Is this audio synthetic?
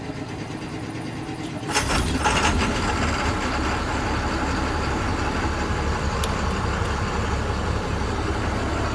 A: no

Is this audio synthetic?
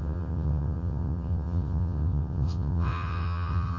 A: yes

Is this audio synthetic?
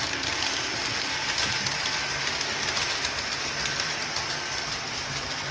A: no